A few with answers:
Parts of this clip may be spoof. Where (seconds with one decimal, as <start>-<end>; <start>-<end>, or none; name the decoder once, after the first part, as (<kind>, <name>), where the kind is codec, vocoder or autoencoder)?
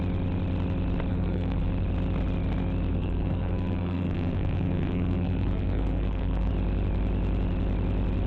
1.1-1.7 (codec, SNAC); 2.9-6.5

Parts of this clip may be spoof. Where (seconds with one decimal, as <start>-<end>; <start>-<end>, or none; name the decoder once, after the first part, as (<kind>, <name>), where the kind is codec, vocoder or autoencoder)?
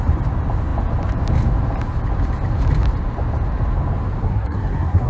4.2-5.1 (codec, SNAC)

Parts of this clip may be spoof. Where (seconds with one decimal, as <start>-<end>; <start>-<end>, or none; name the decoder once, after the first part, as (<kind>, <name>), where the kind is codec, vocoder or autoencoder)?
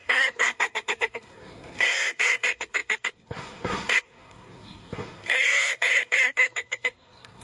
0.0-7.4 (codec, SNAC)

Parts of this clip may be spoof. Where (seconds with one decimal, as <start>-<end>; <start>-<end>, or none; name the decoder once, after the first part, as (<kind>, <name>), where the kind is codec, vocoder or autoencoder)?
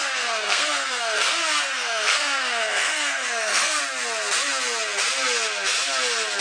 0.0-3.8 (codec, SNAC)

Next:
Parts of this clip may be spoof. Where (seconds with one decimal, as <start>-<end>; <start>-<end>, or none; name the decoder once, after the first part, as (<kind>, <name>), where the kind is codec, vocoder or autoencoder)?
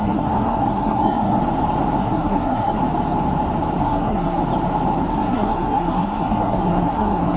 0.0-1.4 (codec, SNAC); 2.0-2.8; 3.8-4.4; 5.1-7.4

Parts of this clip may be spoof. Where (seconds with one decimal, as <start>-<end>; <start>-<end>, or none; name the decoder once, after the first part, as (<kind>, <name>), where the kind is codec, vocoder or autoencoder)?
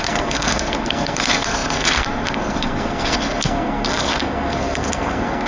0.0-5.5 (codec, SNAC)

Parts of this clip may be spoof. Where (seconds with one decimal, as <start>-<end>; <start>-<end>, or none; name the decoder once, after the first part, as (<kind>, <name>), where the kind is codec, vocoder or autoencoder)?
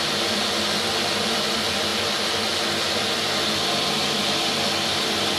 none